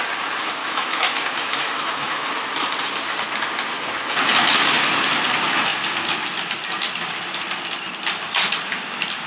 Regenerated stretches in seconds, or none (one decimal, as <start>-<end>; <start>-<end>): 0.6-2.3